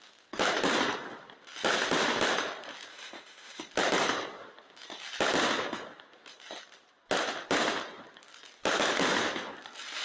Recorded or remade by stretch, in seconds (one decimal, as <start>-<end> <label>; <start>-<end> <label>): 0.0-2.9 recorded; 2.9-3.6 remade; 3.6-10.0 recorded